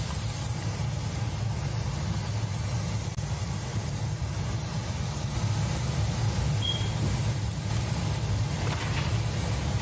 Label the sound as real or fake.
real